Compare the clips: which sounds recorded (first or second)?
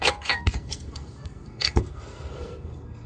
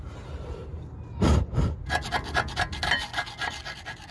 second